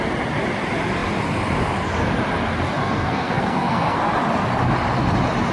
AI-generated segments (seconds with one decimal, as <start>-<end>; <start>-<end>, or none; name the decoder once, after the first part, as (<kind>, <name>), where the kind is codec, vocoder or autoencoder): 2.8-4.0 (codec, SNAC)